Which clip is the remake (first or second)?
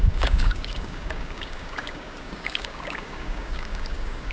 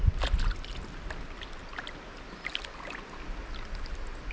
first